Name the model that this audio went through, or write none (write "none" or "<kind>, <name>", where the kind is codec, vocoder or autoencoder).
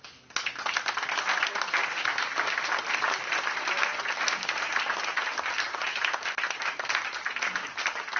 none